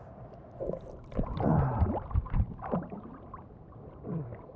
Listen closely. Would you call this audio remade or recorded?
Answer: remade